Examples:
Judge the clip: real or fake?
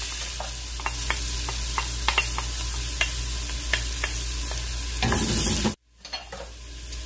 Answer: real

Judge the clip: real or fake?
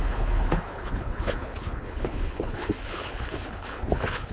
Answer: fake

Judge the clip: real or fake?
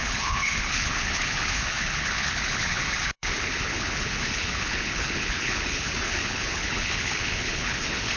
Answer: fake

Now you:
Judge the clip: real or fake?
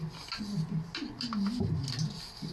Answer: real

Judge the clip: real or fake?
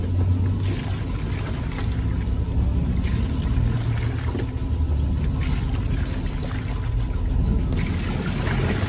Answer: real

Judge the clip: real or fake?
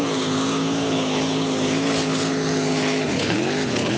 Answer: fake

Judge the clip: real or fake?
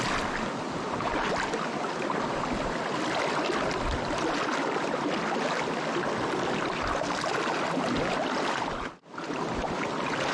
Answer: real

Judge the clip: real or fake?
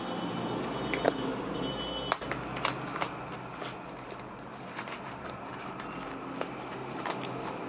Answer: real